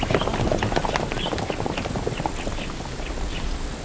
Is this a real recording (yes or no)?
yes